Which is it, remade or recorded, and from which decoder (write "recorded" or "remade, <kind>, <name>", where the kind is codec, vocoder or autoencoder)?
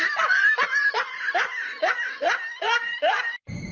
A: remade, vocoder, BigVGAN v2